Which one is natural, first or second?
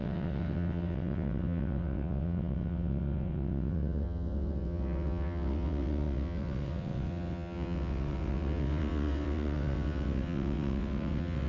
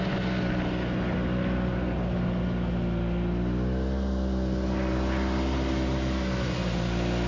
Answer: second